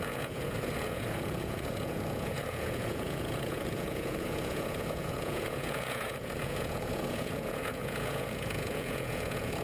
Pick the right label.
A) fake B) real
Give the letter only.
A